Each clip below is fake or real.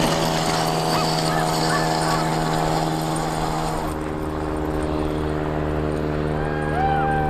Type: real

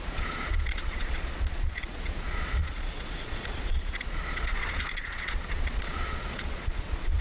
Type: fake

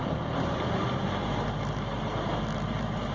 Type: real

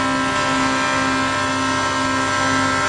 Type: real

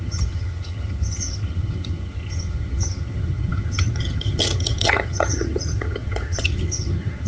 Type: fake